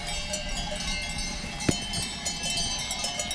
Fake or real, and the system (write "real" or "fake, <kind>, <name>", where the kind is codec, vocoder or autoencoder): real